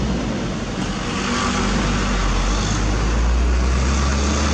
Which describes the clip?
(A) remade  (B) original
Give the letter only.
B